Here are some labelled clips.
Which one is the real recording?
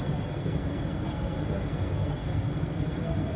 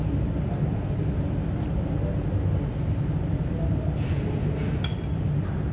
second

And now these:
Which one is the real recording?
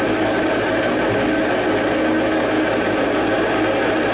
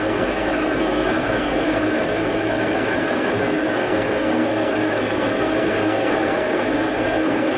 first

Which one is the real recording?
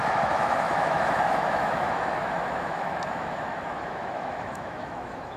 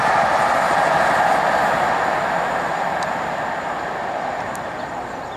second